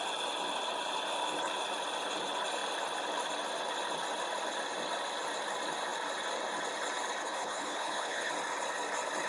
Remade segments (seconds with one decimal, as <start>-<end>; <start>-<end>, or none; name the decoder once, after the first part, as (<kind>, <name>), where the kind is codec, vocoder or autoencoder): 7.2-8.3 (codec, HILCodec)